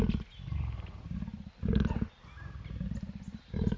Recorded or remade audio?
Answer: recorded